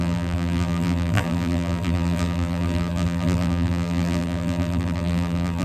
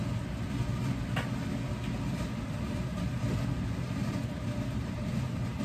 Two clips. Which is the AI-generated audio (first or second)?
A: first